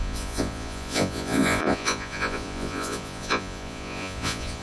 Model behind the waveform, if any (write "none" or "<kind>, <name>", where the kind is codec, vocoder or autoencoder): vocoder, Vocos